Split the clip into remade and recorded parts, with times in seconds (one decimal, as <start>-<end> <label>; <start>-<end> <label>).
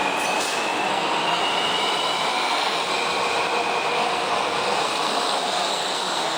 0.0-0.9 recorded; 0.9-1.4 remade; 1.4-2.3 recorded; 2.3-2.9 remade; 2.9-3.9 recorded; 3.9-6.4 remade